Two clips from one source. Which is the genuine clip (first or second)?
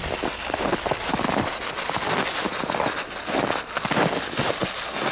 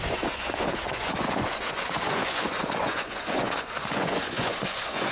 first